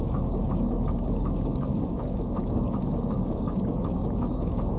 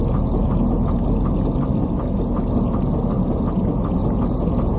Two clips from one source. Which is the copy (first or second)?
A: first